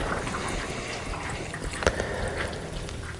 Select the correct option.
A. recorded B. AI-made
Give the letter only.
A